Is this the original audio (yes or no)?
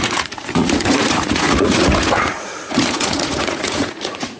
no